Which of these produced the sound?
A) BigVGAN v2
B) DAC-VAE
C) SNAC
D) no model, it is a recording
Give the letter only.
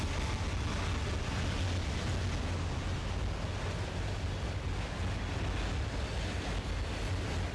D